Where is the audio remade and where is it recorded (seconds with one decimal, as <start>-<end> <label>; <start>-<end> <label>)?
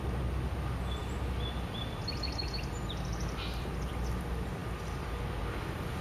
0.0-6.0 recorded